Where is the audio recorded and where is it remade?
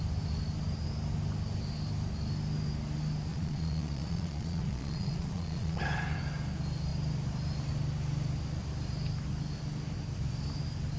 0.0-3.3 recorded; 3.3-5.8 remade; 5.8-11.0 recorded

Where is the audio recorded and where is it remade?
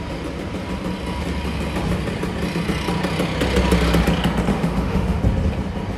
0.0-4.5 recorded; 4.5-5.2 remade; 5.2-6.0 recorded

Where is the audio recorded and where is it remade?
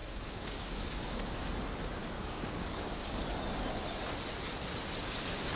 0.0-1.4 remade; 1.4-2.0 recorded; 2.0-3.2 remade; 3.2-5.6 recorded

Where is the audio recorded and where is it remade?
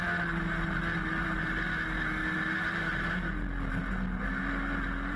0.0-5.2 recorded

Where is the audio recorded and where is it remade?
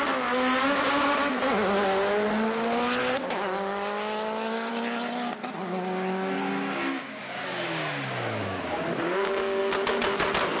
0.0-0.6 recorded; 0.6-1.3 remade; 1.3-3.0 recorded; 3.0-4.7 remade; 4.7-5.7 recorded; 5.7-9.6 remade; 9.6-10.6 recorded